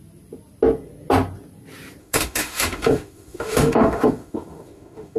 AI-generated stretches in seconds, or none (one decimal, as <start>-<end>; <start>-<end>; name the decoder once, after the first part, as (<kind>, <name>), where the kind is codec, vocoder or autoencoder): 2.0-5.2 (autoencoder, DAC-VAE)